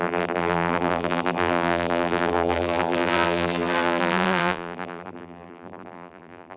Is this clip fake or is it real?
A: fake